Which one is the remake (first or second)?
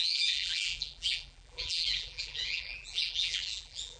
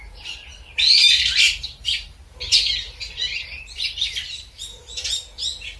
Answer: first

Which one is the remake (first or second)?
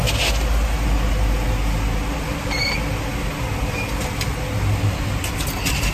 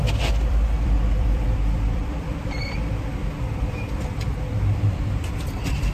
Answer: second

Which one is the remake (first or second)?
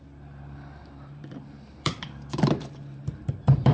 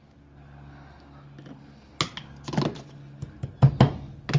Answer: first